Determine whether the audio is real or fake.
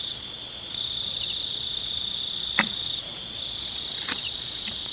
fake